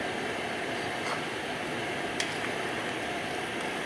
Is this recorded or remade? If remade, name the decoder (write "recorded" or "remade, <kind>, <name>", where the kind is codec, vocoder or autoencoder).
recorded